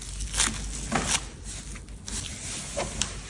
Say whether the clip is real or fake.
real